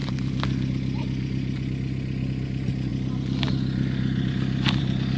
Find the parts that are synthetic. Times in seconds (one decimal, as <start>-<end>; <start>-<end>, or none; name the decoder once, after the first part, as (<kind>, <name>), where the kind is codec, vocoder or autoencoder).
none